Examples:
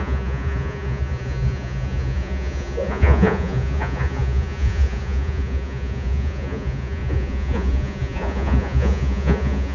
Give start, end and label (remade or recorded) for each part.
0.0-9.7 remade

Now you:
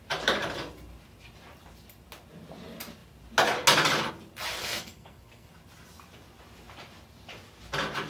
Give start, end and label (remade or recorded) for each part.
0.0-4.6 recorded; 4.6-5.5 remade; 5.5-8.1 recorded

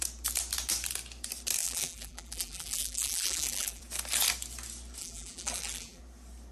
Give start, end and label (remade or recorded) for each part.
0.0-1.6 recorded; 1.6-3.8 remade; 3.8-5.0 recorded; 5.0-6.0 remade; 6.0-6.5 recorded

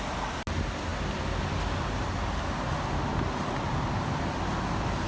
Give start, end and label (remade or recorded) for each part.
0.0-5.1 recorded

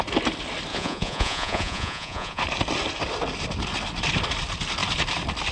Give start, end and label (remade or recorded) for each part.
0.0-0.7 recorded; 0.7-2.4 remade; 2.4-5.5 recorded